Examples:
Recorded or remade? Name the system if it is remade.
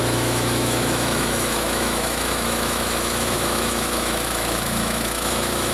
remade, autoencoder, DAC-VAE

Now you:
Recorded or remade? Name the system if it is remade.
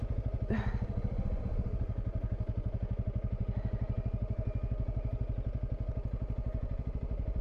recorded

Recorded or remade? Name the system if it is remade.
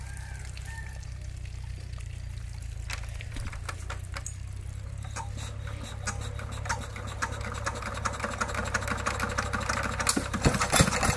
recorded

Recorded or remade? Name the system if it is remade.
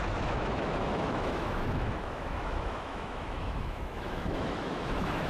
remade, autoencoder, DAC-VAE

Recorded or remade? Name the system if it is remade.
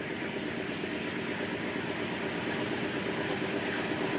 recorded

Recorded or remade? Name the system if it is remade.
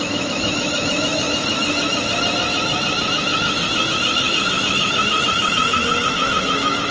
remade, autoencoder, DAC-VAE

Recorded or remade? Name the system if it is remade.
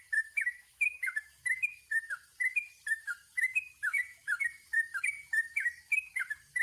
remade, autoencoder, DAC-VAE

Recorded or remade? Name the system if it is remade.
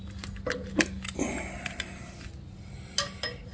recorded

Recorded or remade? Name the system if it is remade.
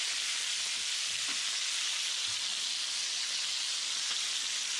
recorded